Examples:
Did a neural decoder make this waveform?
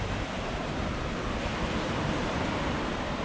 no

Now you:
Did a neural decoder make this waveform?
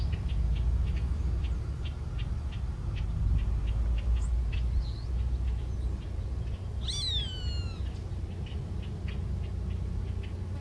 no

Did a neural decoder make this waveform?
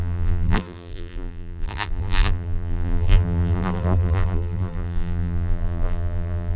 yes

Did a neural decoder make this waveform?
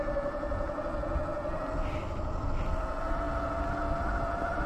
no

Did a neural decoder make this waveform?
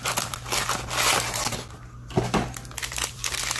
no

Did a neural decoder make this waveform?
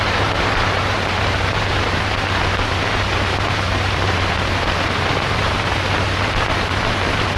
yes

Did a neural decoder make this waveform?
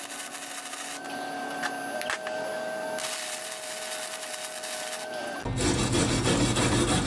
no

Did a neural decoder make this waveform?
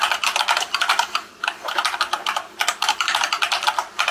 no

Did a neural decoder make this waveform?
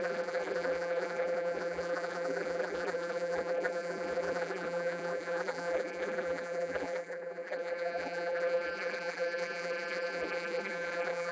yes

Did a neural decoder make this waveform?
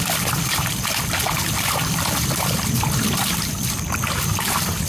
yes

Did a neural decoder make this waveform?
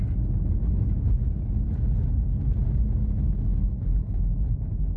no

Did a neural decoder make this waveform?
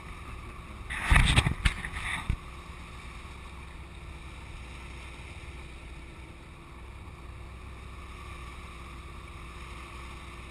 no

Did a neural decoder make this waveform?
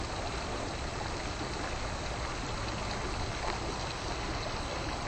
no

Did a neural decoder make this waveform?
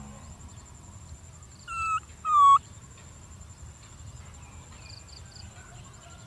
no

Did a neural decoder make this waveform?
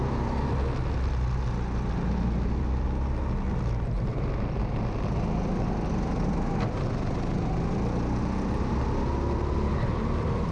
no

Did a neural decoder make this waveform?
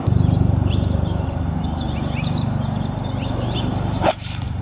yes